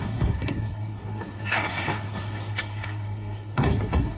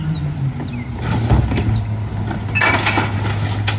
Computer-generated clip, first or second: first